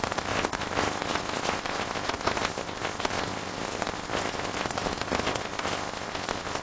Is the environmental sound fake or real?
fake